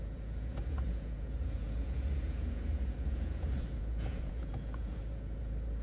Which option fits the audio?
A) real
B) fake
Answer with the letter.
B